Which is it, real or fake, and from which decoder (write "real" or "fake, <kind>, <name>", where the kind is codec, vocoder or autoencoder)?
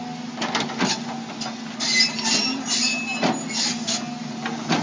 real